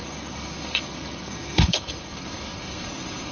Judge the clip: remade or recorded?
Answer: remade